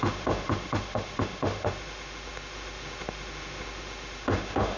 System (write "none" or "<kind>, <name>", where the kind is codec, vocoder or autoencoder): autoencoder, DAC-VAE